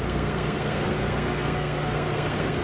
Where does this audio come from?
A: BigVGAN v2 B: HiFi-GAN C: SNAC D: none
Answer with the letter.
C